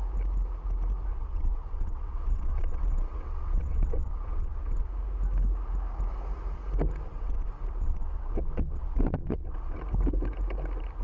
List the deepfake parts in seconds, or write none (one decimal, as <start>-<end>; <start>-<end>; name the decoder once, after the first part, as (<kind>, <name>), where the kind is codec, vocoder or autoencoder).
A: 1.1-4.9 (vocoder, WaveNeXt); 7.1-9.8